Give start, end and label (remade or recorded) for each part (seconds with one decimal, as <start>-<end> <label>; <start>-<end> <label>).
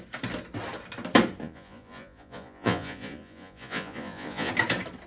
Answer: 0.0-1.4 recorded; 1.4-4.5 remade; 4.5-5.1 recorded